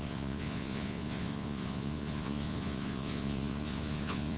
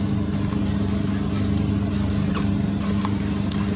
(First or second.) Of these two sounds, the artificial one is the first